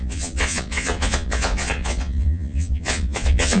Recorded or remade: remade